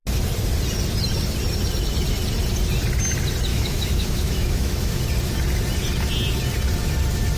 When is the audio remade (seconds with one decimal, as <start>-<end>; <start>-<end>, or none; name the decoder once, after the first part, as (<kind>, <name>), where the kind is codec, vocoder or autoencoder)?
3.5-5.0 (autoencoder, DAC-VAE)